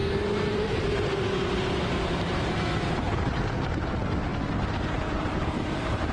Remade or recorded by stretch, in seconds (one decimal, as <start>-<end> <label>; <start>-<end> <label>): 0.0-6.1 remade